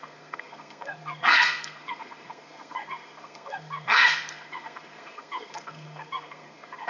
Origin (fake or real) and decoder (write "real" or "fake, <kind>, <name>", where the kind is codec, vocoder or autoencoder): fake, codec, SNAC